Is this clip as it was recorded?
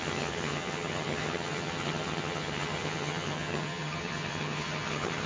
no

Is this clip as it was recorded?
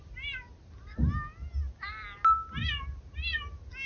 yes